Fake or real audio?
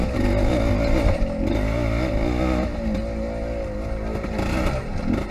real